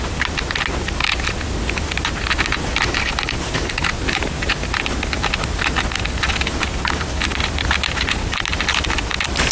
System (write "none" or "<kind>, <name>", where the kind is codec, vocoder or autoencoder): none